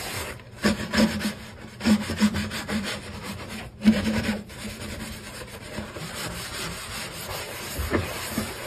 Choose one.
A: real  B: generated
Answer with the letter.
B